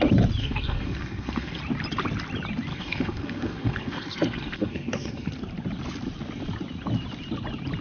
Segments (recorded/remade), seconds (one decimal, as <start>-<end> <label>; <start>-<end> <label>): 0.0-0.4 recorded; 0.4-1.6 remade; 1.6-2.7 recorded; 2.7-5.3 remade; 5.3-7.8 recorded